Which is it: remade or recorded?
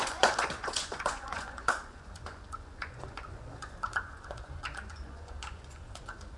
remade